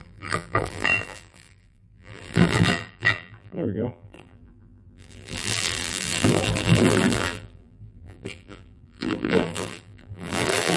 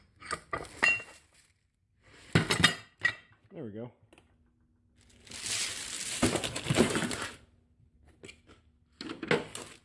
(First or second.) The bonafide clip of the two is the second